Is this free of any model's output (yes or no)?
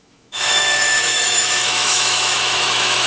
no